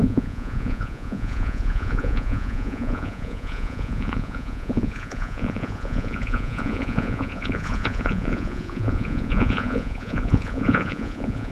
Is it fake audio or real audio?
fake